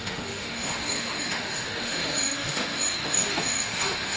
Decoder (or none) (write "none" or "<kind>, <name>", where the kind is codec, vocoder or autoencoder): autoencoder, DAC-VAE